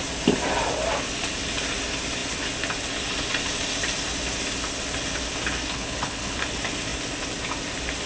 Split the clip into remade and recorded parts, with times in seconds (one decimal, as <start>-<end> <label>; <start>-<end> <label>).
0.0-5.7 recorded; 5.7-6.4 remade; 6.4-8.1 recorded